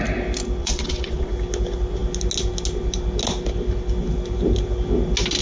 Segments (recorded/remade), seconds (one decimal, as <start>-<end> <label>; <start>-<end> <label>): 0.0-0.6 recorded; 0.6-1.3 remade; 1.3-5.4 recorded